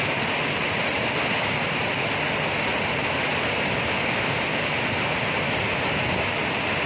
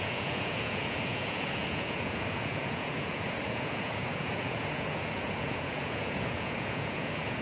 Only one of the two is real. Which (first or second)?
first